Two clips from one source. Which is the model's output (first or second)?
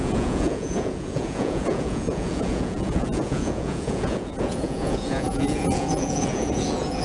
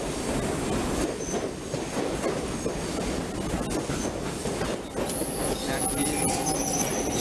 first